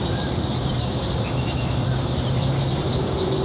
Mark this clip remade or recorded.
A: remade